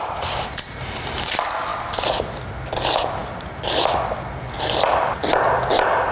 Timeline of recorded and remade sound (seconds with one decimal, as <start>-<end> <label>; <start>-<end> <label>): 0.0-6.1 recorded